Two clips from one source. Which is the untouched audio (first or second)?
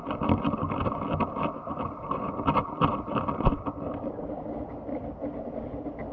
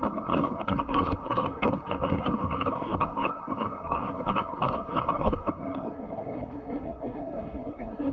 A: first